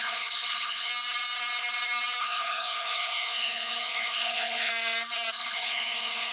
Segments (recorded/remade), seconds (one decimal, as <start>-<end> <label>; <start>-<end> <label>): 0.0-0.9 remade; 0.9-2.2 recorded; 2.2-4.7 remade; 4.7-5.3 recorded; 5.3-6.3 remade